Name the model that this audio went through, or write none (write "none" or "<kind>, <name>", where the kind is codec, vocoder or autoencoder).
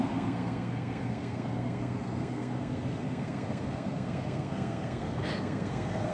codec, SNAC